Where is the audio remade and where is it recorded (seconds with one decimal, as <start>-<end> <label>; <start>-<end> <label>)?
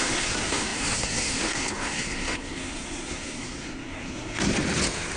0.0-4.5 remade; 4.5-5.2 recorded